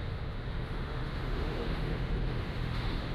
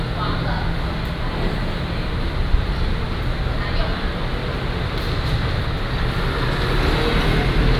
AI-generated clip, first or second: first